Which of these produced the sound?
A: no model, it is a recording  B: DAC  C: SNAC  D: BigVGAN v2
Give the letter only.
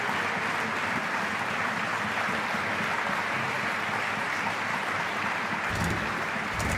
A